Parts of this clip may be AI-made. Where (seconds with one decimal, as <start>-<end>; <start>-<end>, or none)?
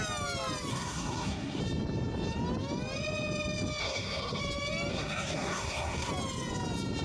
0.7-1.6; 3.8-4.4; 4.9-6.1